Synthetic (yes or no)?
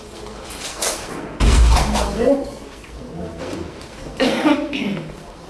yes